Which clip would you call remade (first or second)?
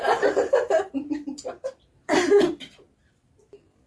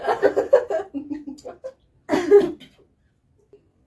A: first